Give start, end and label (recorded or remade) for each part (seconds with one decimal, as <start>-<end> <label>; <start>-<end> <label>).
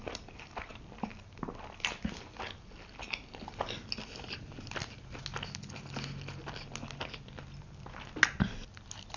0.0-9.2 recorded